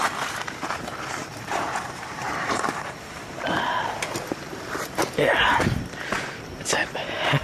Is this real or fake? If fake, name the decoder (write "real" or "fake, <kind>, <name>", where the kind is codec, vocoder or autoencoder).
fake, vocoder, BigVGAN v2